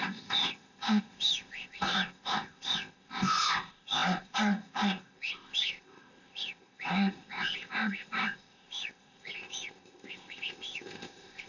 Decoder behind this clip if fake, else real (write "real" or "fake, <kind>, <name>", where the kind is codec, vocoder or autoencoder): fake, codec, ZipCodec